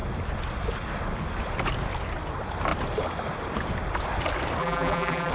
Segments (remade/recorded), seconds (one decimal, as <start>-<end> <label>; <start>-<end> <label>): 0.0-4.6 recorded; 4.6-5.3 remade